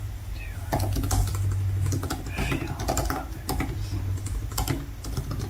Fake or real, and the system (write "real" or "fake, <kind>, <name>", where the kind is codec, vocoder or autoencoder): real